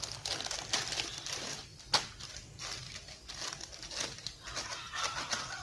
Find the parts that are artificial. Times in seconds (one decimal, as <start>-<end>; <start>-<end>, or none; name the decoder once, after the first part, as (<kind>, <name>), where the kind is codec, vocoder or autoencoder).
none